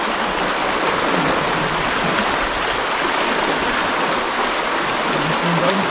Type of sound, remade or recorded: recorded